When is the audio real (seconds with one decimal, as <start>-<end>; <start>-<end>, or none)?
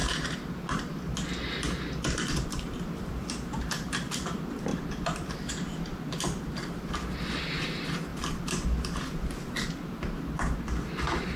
0.0-0.7; 8.1-9.3